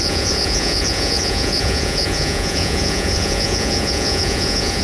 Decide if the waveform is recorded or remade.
remade